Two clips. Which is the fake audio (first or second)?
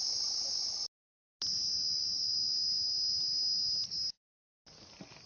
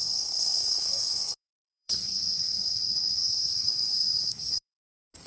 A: second